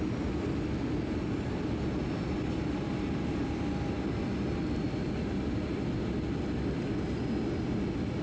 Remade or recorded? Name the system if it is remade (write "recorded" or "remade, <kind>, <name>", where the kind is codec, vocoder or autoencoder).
recorded